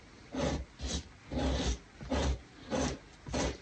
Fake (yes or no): no